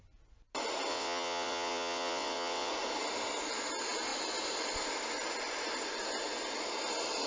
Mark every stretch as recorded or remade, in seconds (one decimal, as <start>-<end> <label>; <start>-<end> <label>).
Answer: 0.0-0.9 recorded; 0.9-2.7 remade; 2.7-7.3 recorded

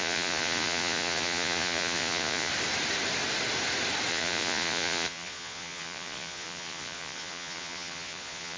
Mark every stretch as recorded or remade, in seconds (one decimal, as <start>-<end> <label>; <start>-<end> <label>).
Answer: 0.0-2.5 remade; 2.5-4.1 recorded; 4.1-8.6 remade

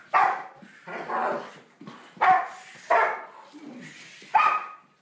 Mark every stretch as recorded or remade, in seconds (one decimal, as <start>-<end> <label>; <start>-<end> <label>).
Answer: 0.0-5.0 recorded

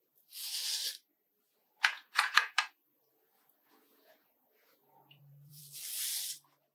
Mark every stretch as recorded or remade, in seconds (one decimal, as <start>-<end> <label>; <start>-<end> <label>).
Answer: 0.0-1.6 recorded; 1.6-5.6 remade; 5.6-6.7 recorded

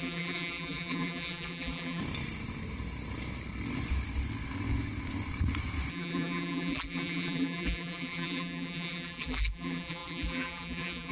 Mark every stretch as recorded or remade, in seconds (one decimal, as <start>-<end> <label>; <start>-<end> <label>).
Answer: 0.0-2.0 remade; 2.0-5.9 recorded; 5.9-11.1 remade

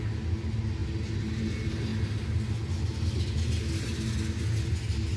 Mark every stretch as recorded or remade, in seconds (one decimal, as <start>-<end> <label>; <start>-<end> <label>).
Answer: 0.0-5.2 recorded

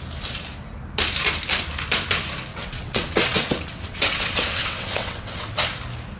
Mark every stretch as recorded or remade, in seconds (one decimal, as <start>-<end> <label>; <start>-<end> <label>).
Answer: 0.0-2.5 recorded; 2.5-5.6 remade; 5.6-6.2 recorded

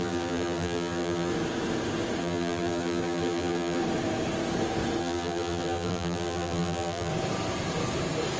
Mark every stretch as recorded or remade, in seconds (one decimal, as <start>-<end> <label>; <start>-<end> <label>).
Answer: 0.0-1.3 remade; 1.3-2.2 recorded; 2.2-3.8 remade; 3.8-5.0 recorded; 5.0-7.1 remade; 7.1-8.4 recorded